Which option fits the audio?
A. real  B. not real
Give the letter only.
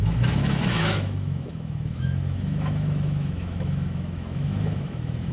B